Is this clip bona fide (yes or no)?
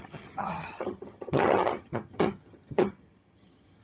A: no